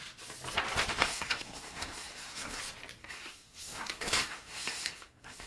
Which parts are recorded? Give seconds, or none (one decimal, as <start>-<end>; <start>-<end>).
0.0-1.0; 2.6-3.0